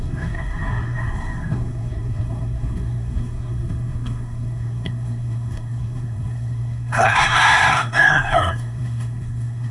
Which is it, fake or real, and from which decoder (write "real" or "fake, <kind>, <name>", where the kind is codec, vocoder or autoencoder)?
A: fake, codec, SNAC